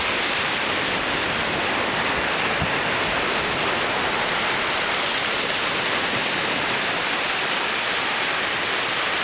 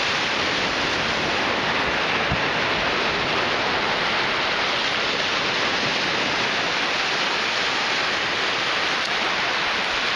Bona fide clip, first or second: second